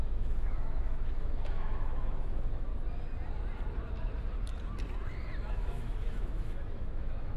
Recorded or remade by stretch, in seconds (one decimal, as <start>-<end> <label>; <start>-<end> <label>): 0.0-2.7 remade; 2.7-5.5 recorded; 5.5-7.4 remade